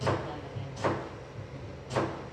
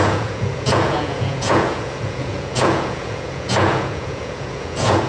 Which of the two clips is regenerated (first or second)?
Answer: second